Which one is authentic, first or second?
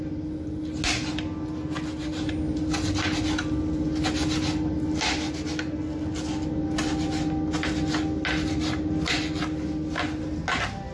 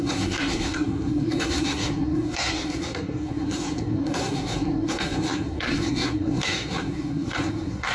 first